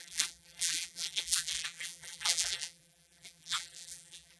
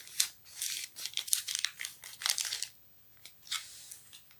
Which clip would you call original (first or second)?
second